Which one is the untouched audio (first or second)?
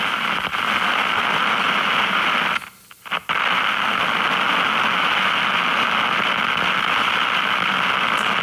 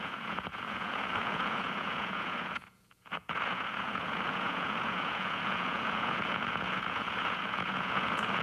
first